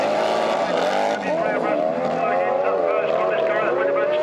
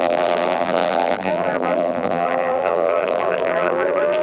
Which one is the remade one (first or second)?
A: second